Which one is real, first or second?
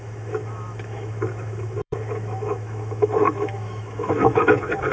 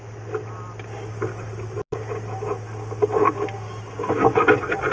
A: second